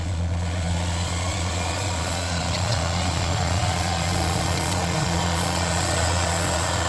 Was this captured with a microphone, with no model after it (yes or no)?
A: no